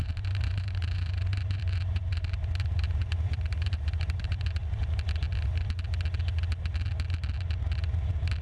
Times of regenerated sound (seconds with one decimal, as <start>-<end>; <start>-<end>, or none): 0.0-4.6